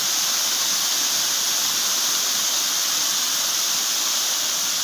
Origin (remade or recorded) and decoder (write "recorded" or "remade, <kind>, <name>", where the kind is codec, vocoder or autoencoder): recorded